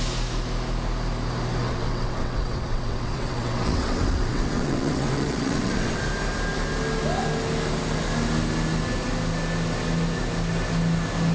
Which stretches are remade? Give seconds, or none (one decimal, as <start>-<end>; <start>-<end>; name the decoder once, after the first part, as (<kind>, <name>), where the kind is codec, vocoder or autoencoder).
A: 1.6-6.0 (vocoder, WaveNeXt)